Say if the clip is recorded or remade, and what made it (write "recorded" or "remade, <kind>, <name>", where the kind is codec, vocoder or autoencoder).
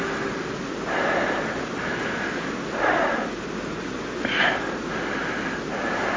recorded